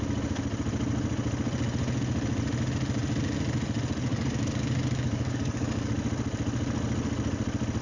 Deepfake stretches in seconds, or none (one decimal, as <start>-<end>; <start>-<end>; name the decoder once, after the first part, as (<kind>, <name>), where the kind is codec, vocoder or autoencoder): 4.1-5.9 (codec, DAC)